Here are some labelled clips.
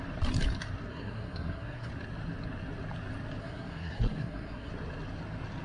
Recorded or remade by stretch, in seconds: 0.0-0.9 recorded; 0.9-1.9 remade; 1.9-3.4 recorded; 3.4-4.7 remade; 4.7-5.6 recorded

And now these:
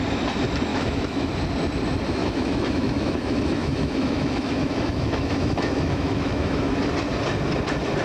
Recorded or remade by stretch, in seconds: 0.0-0.7 recorded; 0.7-1.3 remade; 1.3-2.2 recorded; 2.2-6.8 remade; 6.8-8.0 recorded

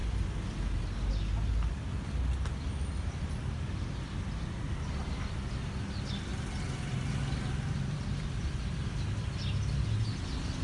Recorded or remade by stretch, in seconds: 0.0-6.3 recorded; 6.3-9.0 remade; 9.0-10.6 recorded

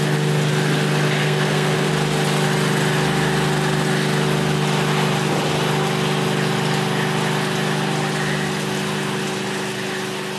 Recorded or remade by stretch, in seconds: 0.0-1.2 recorded; 1.2-1.9 remade; 1.9-10.4 recorded

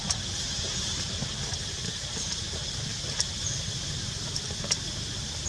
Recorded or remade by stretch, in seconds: 0.0-1.1 remade; 1.1-2.1 recorded; 2.1-5.5 remade

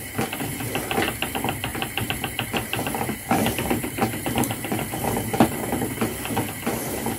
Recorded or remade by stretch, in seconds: 0.0-1.7 recorded; 1.7-5.7 remade; 5.7-7.2 recorded